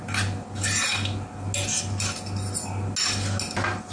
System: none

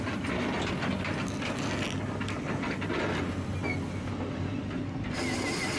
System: none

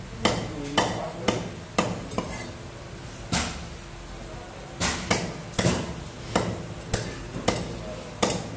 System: none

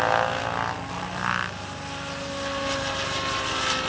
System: none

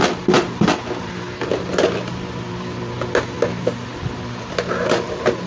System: none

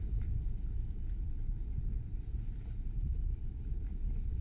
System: none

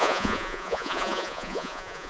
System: vocoder, Vocos